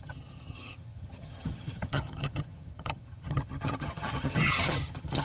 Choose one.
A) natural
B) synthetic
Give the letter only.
B